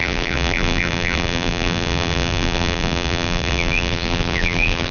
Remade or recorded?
remade